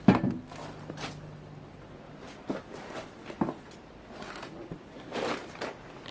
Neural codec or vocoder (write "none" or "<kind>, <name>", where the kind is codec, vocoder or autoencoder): none